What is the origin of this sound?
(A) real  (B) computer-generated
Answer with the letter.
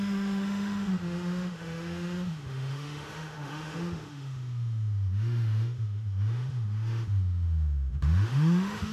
B